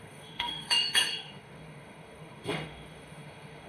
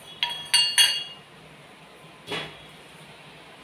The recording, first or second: second